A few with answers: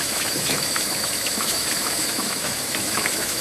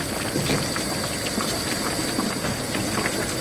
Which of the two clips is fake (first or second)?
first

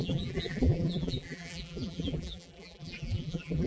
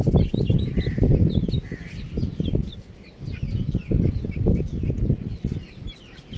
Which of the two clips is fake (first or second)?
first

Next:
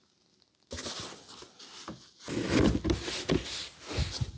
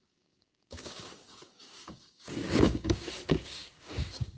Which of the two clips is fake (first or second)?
second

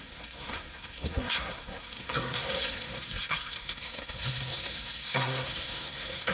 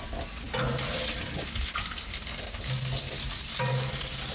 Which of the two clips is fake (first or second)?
first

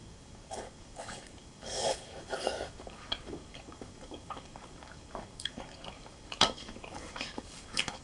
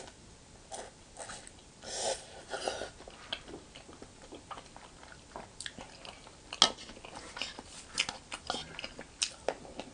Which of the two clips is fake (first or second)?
first